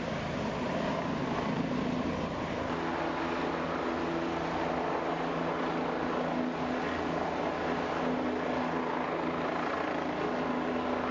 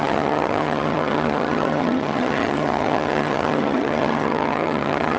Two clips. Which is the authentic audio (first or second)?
first